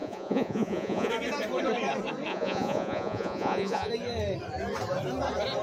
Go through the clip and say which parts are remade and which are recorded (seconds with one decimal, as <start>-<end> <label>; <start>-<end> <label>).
0.0-1.1 remade; 1.1-2.3 recorded; 2.3-3.9 remade; 3.9-5.6 recorded